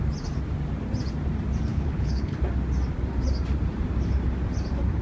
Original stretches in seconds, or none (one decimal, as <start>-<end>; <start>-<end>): 0.0-1.7; 2.4-5.0